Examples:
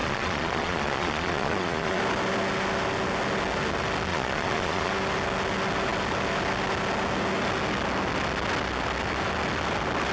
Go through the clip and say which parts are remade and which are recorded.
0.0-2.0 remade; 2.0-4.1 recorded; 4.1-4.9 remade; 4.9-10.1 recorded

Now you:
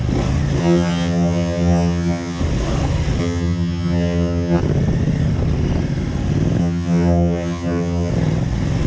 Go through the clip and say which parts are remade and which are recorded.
0.0-0.6 recorded; 0.6-2.4 remade; 2.4-3.2 recorded; 3.2-4.6 remade; 4.6-6.6 recorded; 6.6-8.1 remade; 8.1-8.9 recorded

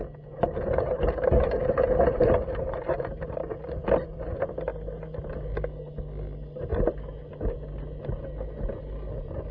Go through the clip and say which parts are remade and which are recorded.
0.0-9.5 recorded

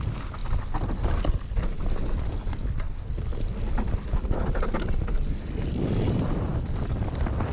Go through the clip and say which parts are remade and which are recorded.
0.0-7.5 recorded

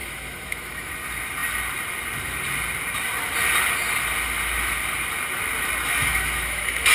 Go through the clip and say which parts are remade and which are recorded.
0.0-0.9 remade; 0.9-6.0 recorded; 6.0-6.9 remade

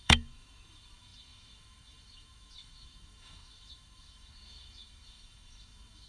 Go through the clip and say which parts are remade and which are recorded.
0.0-6.1 remade